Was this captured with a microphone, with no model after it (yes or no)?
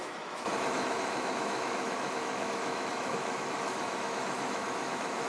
no